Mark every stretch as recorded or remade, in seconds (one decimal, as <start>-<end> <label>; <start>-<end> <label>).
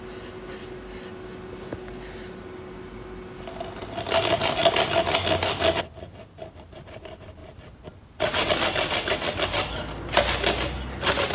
0.0-11.3 recorded